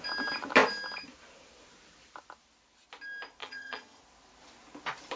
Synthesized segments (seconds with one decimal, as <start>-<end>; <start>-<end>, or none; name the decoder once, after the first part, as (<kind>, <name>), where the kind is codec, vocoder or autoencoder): 3.4-4.0 (vocoder, HiFi-GAN)